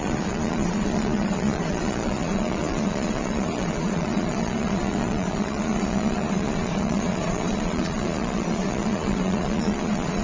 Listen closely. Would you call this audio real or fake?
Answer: fake